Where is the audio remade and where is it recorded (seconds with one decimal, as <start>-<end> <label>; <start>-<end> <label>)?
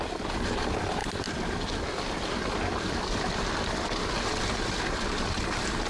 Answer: 0.0-5.9 recorded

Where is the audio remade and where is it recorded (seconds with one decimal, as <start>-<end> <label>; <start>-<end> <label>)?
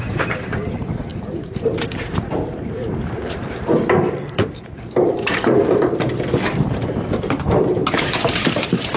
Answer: 0.0-9.0 remade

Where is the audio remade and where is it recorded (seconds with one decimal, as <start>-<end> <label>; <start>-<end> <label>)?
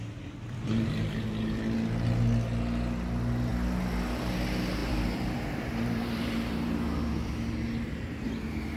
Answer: 0.0-4.8 recorded; 4.8-5.4 remade; 5.4-8.8 recorded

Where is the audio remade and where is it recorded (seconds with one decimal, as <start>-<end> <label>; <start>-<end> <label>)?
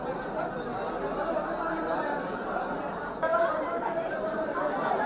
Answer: 0.0-2.3 recorded; 2.3-2.8 remade; 2.8-3.3 recorded; 3.3-5.1 remade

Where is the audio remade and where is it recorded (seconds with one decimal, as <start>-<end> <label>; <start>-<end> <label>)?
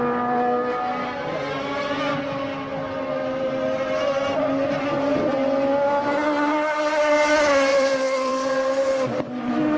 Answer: 0.0-7.7 recorded; 7.7-8.3 remade; 8.3-9.8 recorded